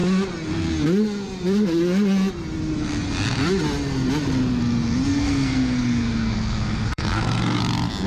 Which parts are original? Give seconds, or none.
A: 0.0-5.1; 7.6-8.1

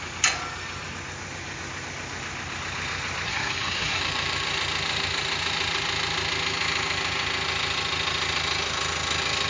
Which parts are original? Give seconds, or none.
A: 0.0-3.3; 4.0-9.5

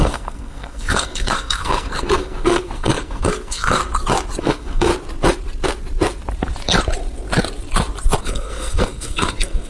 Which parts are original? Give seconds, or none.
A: 3.8-4.4; 4.9-8.2

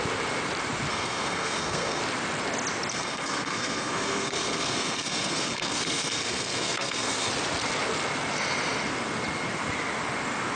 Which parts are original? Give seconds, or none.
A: 0.0-0.9; 2.0-2.9; 7.3-10.6

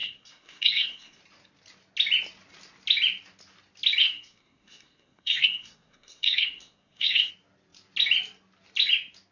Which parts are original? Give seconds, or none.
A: 1.2-4.0; 7.3-9.3

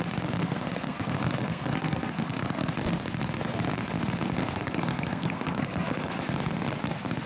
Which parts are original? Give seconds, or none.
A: 0.0-0.4; 2.7-4.4; 6.2-7.3

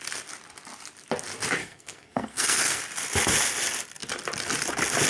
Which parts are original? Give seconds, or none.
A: 0.0-1.6; 2.8-5.1

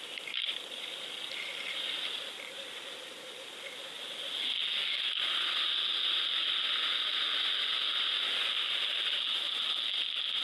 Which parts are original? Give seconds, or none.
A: 0.0-10.4